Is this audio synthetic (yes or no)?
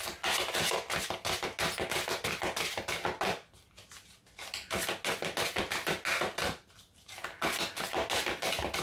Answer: no